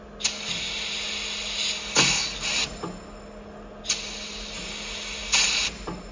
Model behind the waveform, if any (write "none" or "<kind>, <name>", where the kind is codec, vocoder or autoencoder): none